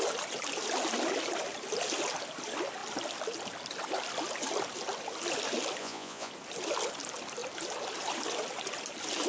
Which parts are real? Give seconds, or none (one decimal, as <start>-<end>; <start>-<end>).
0.0-5.8; 6.3-9.3